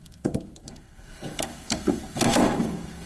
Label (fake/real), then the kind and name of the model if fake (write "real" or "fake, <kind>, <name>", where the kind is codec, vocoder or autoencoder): fake, codec, SNAC